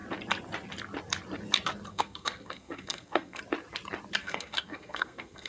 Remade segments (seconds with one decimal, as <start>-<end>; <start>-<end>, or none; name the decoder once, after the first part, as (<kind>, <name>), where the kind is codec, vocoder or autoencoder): 1.9-3.4 (codec, SNAC); 4.2-5.5